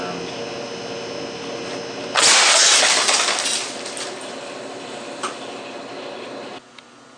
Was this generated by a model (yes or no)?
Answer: no